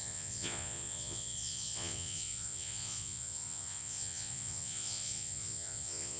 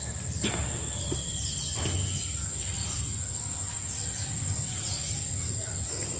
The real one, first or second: second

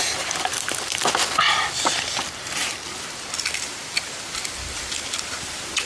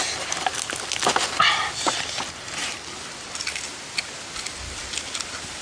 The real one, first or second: second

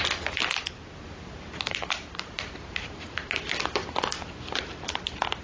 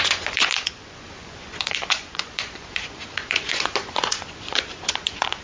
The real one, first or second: first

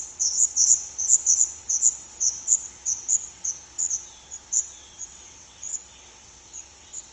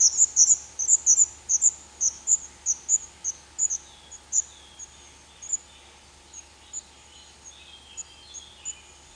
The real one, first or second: second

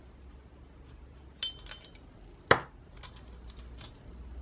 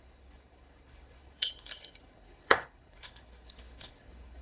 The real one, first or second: first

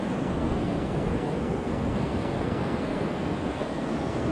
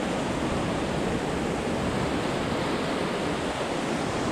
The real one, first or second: second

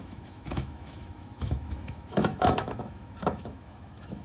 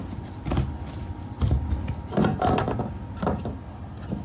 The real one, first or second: second